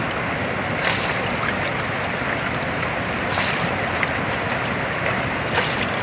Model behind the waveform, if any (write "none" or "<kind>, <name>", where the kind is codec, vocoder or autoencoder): none